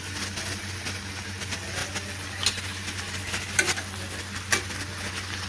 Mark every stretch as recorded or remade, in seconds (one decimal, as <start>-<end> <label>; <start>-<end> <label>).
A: 0.0-5.5 recorded